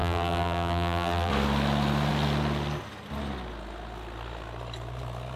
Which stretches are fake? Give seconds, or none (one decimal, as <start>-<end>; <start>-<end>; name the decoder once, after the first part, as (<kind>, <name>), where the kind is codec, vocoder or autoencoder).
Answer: 0.0-1.3 (vocoder, BigVGAN v2)

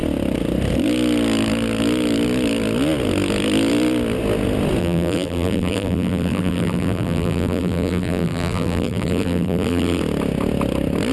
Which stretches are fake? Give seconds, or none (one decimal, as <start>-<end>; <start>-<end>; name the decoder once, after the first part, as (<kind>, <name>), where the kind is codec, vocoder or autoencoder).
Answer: 4.8-10.0 (vocoder, BigVGAN v2)

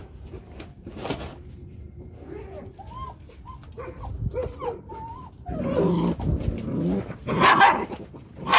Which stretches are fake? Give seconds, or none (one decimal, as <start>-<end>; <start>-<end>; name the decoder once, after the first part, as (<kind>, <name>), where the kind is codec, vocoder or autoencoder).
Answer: 0.0-2.1 (vocoder, BigVGAN v2); 4.4-4.9; 7.2-8.1